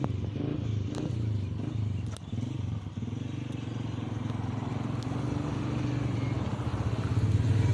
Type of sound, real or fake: real